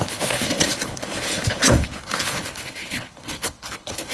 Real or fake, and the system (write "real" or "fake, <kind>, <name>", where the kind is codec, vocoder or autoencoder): fake, codec, HILCodec